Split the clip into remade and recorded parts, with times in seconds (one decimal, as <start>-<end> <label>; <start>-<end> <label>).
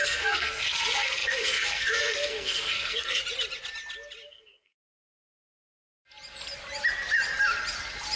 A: 0.0-3.2 remade; 3.2-4.3 recorded; 4.3-5.6 remade; 5.6-8.2 recorded